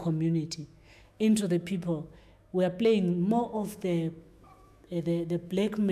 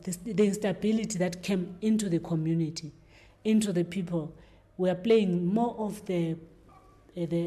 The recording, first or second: second